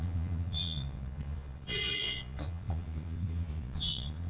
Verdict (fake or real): fake